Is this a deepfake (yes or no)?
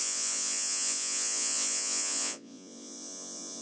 yes